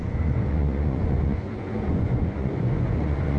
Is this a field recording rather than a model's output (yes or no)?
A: no